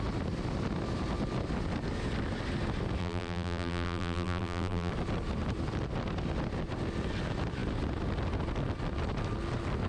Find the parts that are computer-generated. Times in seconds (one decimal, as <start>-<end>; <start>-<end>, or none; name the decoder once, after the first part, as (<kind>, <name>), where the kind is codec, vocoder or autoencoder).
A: 3.0-4.9 (vocoder, BigVGAN v2)